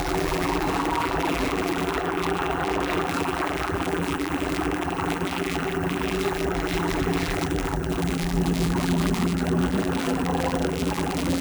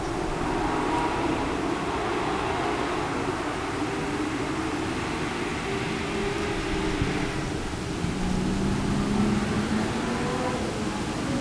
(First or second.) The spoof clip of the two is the first